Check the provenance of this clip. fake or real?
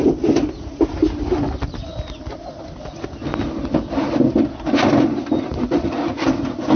real